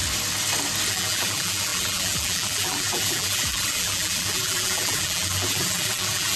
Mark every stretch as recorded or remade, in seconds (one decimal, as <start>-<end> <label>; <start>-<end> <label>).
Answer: 0.0-0.9 recorded; 0.9-6.4 remade